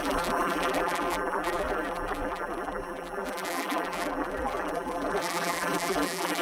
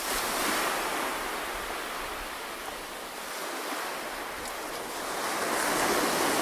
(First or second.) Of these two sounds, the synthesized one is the first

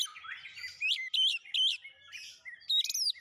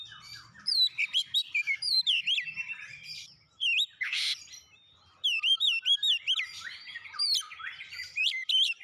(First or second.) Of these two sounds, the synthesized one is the second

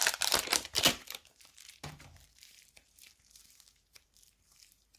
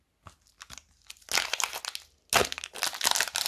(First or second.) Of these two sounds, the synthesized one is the first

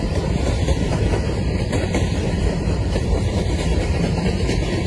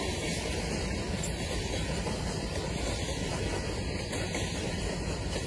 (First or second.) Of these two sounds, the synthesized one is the first